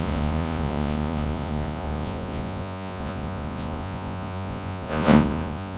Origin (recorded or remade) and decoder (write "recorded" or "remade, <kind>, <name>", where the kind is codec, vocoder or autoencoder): remade, vocoder, Vocos